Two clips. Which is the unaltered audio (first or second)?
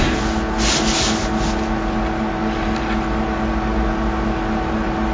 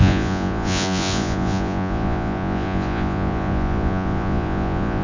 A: first